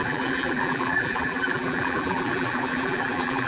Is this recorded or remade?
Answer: remade